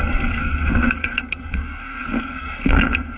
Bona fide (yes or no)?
no